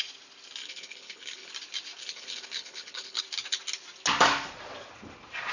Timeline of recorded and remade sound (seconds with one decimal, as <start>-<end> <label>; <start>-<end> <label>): 0.0-0.6 recorded; 0.6-1.5 remade; 1.5-2.0 recorded; 2.0-3.2 remade; 3.2-5.5 recorded